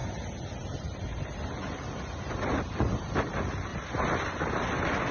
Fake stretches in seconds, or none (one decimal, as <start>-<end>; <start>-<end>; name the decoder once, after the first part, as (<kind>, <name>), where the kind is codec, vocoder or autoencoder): 0.0-3.1 (vocoder, BigVGAN v2); 3.7-4.5